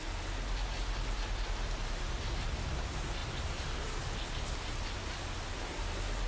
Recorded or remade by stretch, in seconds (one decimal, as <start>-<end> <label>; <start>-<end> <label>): 0.0-6.3 recorded

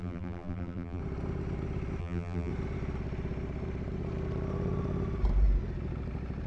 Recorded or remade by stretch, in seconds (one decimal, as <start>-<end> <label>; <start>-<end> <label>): 0.0-1.0 remade; 1.0-2.0 recorded; 2.0-2.5 remade; 2.5-6.5 recorded